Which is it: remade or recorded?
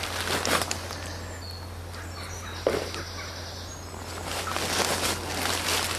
recorded